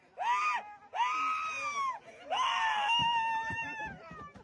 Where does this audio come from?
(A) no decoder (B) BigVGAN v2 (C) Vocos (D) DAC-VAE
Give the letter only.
A